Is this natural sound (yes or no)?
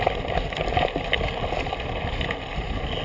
yes